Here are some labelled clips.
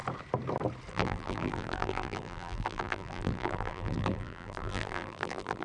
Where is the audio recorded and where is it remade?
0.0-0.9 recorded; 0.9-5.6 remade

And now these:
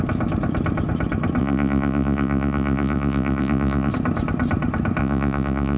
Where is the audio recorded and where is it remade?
0.0-1.4 recorded; 1.4-3.9 remade; 3.9-5.0 recorded; 5.0-5.8 remade

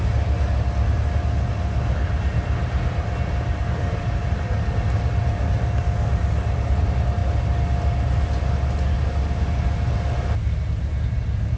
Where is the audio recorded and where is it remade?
0.0-11.6 recorded

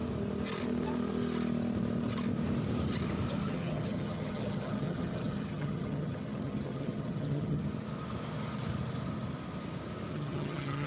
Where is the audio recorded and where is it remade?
0.0-3.4 recorded; 3.4-7.6 remade; 7.6-10.1 recorded; 10.1-10.9 remade